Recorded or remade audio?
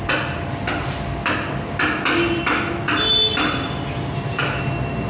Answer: recorded